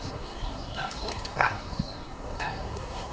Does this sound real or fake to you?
fake